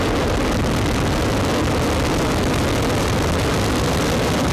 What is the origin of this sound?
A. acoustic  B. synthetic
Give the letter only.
A